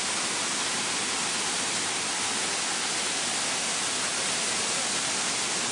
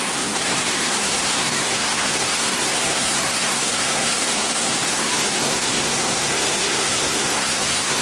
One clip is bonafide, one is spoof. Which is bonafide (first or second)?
first